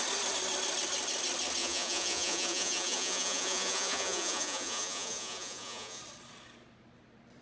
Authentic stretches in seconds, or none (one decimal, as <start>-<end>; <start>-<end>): 0.0-1.6; 6.0-7.4